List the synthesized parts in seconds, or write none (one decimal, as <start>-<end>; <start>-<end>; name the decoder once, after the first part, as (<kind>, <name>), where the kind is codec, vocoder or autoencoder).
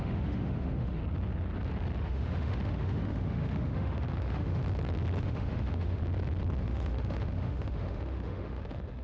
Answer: 0.0-1.0 (autoencoder, DAC-VAE); 2.0-4.6; 5.2-6.0; 6.6-9.0